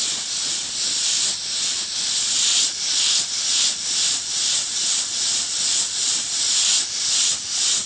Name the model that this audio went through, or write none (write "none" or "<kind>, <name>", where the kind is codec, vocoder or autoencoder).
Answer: none